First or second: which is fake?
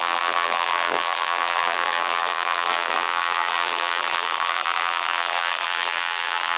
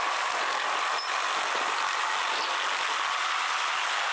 first